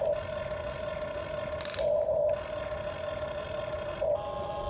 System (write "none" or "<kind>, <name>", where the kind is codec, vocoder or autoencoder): none